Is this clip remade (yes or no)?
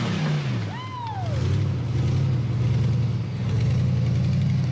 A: no